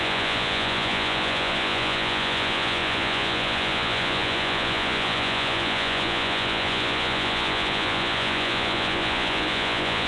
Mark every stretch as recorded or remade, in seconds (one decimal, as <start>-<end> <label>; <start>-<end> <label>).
0.0-10.1 remade